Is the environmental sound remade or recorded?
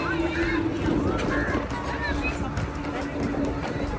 recorded